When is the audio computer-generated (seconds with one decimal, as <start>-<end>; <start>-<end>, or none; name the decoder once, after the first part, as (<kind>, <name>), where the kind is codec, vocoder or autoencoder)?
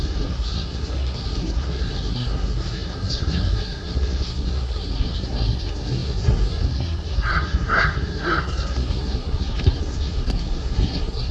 0.0-11.3 (codec, SNAC)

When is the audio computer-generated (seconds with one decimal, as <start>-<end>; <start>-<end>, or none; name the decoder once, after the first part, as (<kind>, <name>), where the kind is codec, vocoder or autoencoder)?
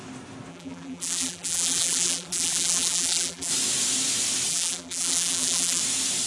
0.5-3.5 (vocoder, BigVGAN v2); 4.5-5.8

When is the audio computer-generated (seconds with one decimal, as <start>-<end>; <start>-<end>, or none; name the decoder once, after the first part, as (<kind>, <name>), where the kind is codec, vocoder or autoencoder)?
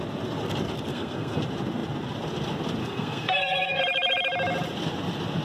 0.9-1.4 (codec, SNAC); 2.8-3.8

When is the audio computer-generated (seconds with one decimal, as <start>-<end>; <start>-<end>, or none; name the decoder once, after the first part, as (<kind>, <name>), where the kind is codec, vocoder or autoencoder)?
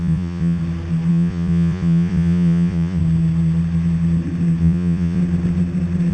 0.0-0.6 (vocoder, Vocos); 1.1-3.0; 4.6-5.2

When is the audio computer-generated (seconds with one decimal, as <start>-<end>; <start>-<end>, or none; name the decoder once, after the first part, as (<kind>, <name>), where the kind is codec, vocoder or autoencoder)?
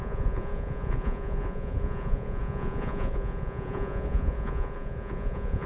0.0-5.7 (vocoder, Vocos)